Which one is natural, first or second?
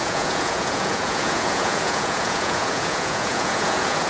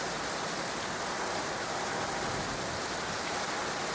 second